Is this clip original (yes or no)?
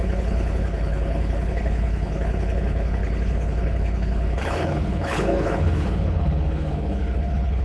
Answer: no